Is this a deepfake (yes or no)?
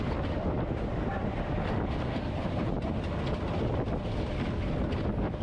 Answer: no